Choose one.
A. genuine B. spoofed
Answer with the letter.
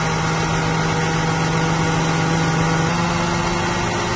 A